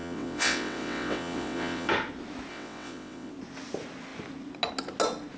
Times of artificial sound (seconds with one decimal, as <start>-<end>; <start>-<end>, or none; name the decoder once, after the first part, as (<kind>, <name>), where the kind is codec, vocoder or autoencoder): 0.0-1.9 (vocoder, WaveNeXt); 2.5-3.3